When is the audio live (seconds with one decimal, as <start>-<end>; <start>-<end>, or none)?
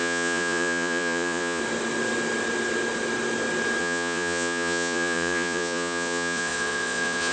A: 1.6-3.8